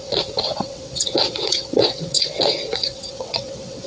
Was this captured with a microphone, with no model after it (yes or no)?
no